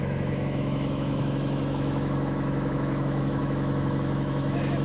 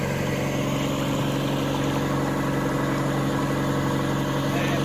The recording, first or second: second